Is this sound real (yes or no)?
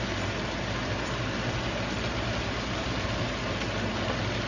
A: yes